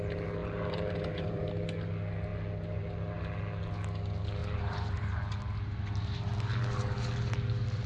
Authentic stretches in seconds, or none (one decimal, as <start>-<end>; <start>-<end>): 0.0-0.4; 1.5-4.4; 5.2-7.9